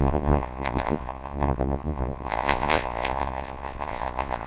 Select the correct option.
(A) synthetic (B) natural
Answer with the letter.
A